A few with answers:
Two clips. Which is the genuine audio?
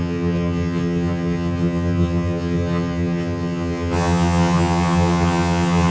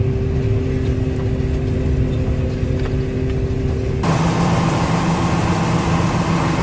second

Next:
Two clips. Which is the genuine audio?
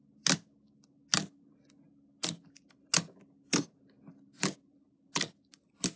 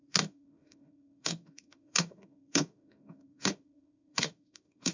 first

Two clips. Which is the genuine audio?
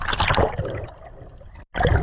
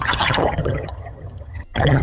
first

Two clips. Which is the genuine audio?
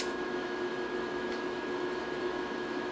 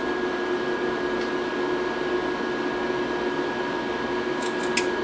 second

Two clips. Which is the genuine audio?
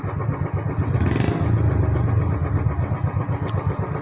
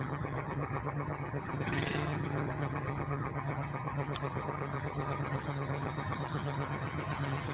first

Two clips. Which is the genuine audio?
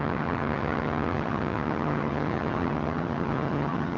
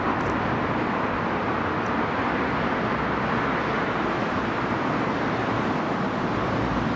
second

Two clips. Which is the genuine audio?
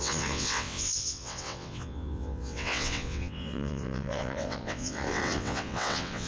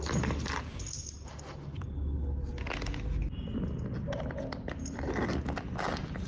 second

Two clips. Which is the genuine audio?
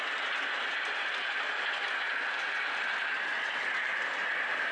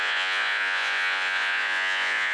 first